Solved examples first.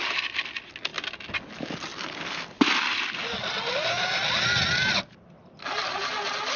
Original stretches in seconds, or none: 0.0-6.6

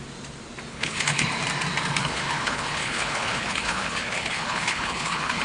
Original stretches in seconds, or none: 0.0-0.7; 1.3-2.0

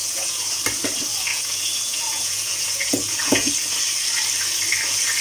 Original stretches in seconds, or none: 0.5-1.3; 3.5-5.2

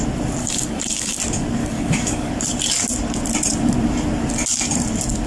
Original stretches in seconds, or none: 0.0-0.4; 1.2-1.6; 2.3-5.3

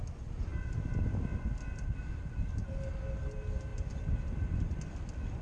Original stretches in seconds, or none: 0.0-5.4

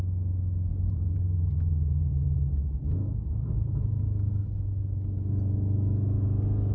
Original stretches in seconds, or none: 0.0-0.7; 4.0-6.7

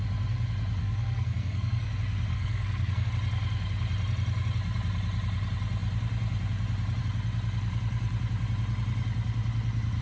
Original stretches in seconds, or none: 0.0-0.8; 1.9-2.3; 3.1-10.0

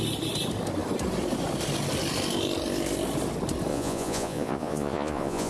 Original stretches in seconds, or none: 0.0-3.7